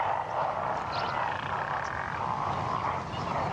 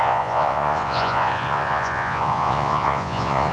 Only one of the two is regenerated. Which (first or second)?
second